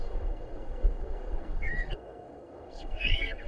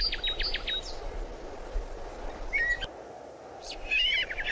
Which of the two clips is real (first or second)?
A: second